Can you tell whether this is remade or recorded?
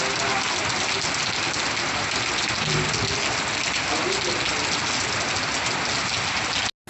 recorded